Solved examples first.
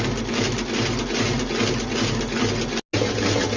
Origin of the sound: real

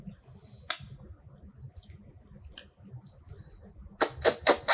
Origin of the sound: real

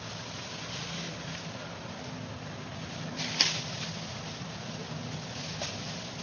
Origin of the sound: real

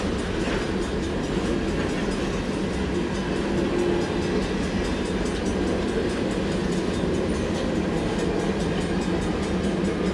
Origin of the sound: real